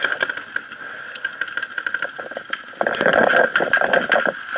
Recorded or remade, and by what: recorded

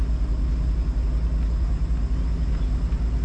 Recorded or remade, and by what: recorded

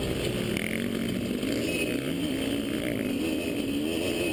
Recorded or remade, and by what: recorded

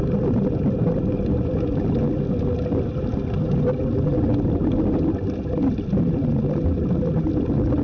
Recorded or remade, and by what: recorded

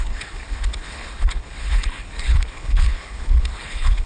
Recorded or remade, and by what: remade, codec, HILCodec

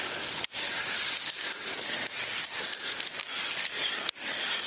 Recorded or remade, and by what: recorded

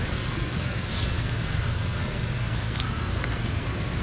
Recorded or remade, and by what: remade, codec, SNAC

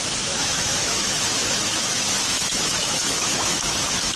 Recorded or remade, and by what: remade, autoencoder, DAC-VAE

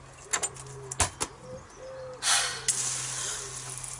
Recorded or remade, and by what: recorded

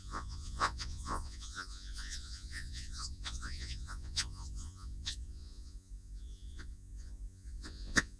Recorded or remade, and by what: remade, vocoder, Vocos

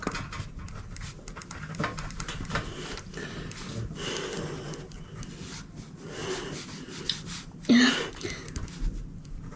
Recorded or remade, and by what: recorded